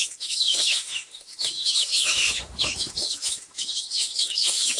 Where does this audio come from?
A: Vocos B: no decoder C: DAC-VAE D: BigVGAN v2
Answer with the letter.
C